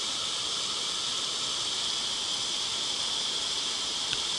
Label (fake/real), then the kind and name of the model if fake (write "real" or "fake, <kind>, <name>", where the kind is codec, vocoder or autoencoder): real